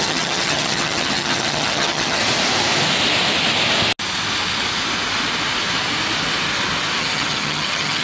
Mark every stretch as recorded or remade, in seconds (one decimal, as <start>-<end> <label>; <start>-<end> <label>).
0.0-2.2 remade; 2.2-7.0 recorded; 7.0-8.0 remade